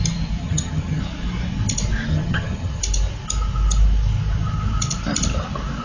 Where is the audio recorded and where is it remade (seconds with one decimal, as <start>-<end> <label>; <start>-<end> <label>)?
0.0-0.4 recorded; 0.4-1.0 remade; 1.0-2.1 recorded; 2.1-2.8 remade; 2.8-5.8 recorded